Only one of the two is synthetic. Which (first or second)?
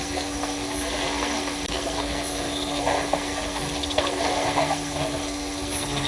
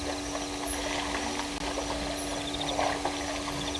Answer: first